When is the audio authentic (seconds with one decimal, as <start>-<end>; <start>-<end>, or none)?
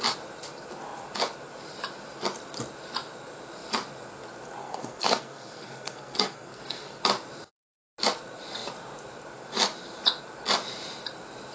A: 0.0-4.6; 7.0-11.5